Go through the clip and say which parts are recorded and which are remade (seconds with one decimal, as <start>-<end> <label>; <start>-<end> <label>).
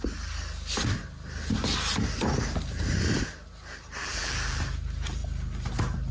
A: 0.0-4.0 recorded; 4.0-4.6 remade; 4.6-6.1 recorded